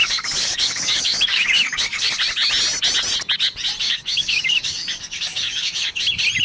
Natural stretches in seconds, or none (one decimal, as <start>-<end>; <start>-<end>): 2.1-3.8; 6.0-6.4